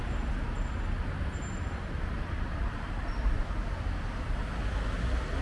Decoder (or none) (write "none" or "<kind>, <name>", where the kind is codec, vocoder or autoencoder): none